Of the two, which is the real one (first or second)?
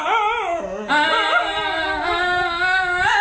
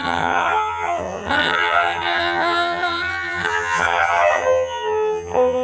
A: first